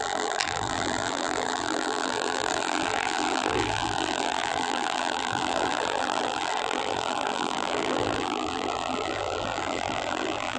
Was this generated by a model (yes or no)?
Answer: yes